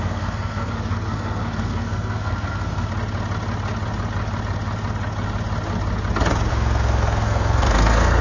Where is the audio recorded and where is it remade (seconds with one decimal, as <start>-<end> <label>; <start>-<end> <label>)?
0.0-2.9 remade; 2.9-6.5 recorded; 6.5-8.2 remade